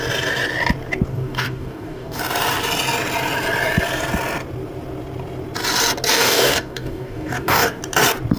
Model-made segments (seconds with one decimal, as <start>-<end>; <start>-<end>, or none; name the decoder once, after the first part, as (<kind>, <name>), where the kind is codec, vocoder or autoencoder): 1.1-2.2 (codec, DAC); 6.1-7.8